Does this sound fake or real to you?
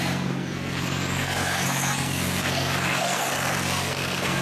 fake